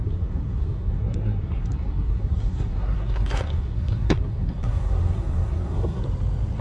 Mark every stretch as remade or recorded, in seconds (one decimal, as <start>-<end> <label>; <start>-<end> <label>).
0.0-6.0 remade; 6.0-6.6 recorded